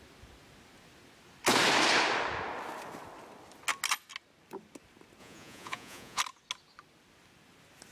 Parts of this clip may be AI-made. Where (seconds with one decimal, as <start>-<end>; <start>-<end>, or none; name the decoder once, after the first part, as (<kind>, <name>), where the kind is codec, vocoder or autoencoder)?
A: 5.2-6.2 (vocoder, Vocos)